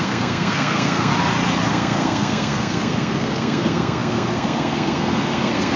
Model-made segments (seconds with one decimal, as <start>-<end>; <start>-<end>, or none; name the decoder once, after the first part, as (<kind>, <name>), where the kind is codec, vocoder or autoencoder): 0.0-1.1 (codec, SNAC); 1.7-5.8